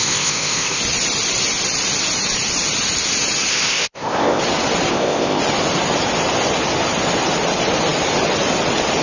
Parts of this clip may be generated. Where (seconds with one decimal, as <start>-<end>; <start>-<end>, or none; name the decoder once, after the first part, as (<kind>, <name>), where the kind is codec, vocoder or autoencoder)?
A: 0.0-0.8 (codec, ZipCodec); 3.5-4.4; 4.9-5.4

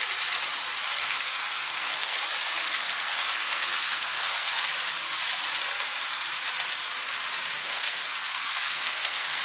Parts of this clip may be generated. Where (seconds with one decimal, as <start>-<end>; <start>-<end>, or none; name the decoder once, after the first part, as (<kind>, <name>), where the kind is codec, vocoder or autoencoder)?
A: 1.0-2.2 (codec, SNAC); 2.6-4.7; 7.6-9.4

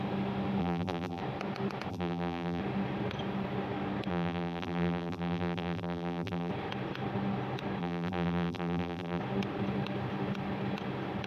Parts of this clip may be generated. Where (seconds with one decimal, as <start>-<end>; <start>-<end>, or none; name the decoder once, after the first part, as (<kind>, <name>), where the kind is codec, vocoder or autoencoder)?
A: 0.6-1.2 (vocoder, BigVGAN v2); 1.9-2.6; 4.1-6.5; 7.8-9.2

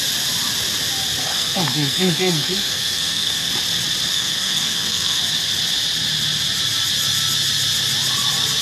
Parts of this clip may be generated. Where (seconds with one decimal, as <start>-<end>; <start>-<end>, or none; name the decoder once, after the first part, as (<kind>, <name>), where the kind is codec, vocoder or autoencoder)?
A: 1.2-3.5 (codec, SNAC); 4.1-5.2

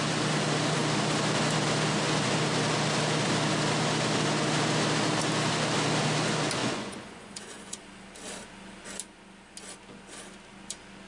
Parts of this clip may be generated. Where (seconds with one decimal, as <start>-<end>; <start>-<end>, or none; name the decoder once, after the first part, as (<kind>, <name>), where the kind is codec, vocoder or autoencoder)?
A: 6.6-7.8 (vocoder, Vocos)

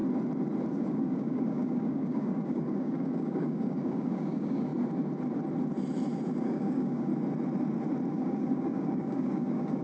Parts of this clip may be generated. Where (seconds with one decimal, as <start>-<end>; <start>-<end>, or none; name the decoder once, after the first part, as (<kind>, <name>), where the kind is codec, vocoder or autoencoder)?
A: 0.7-4.7 (codec, DAC); 6.4-7.1; 8.1-9.8

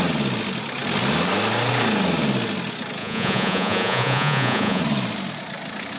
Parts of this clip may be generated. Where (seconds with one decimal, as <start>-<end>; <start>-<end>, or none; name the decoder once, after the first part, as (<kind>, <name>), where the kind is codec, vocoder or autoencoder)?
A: 3.0-4.8 (vocoder, Vocos)